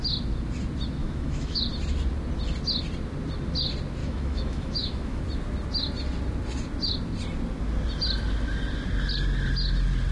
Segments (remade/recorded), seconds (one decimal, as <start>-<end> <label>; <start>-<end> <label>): 0.0-1.0 recorded; 1.0-1.6 remade; 1.6-4.0 recorded; 4.0-5.2 remade; 5.2-10.1 recorded